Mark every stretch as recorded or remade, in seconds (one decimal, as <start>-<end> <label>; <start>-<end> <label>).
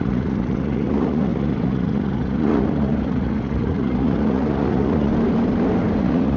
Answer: 0.0-5.1 remade; 5.1-6.0 recorded; 6.0-6.4 remade